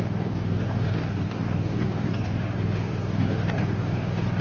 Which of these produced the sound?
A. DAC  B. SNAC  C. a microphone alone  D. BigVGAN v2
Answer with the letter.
A